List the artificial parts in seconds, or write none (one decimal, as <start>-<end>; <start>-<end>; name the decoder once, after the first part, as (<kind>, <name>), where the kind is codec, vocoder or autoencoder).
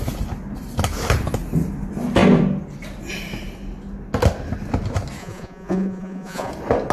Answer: 5.2-6.5 (vocoder, Vocos)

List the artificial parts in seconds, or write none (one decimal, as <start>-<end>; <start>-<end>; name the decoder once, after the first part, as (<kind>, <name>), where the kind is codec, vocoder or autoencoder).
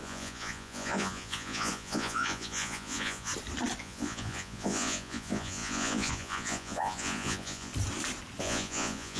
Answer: 0.0-3.3 (vocoder, Vocos); 3.8-7.7; 8.4-9.2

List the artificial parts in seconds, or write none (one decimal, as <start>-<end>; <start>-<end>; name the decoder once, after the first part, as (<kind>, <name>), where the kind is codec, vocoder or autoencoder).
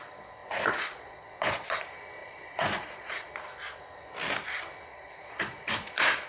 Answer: 0.4-1.8 (vocoder, Vocos); 2.2-3.3; 4.9-6.3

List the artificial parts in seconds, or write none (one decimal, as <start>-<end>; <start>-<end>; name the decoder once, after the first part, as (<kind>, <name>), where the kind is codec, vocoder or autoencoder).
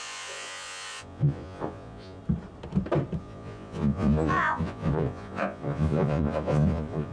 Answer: 0.0-2.2 (vocoder, Vocos); 3.2-7.1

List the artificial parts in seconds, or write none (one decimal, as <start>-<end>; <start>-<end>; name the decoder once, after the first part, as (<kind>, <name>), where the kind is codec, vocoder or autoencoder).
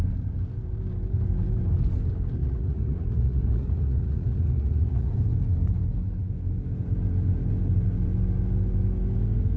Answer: 2.4-5.1 (vocoder, Vocos)